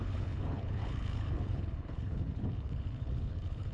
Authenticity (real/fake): fake